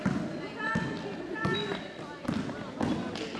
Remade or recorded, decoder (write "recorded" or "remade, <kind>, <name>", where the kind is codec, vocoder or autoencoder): recorded